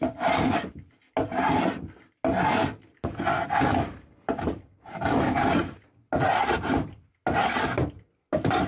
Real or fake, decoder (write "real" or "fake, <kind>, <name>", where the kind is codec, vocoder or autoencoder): real